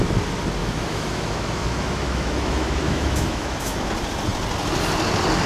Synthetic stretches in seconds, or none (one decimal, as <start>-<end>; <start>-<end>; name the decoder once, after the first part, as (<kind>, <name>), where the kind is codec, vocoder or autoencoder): 0.6-3.9 (autoencoder, DAC-VAE)